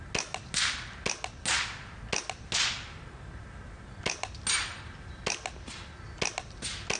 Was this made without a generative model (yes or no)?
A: yes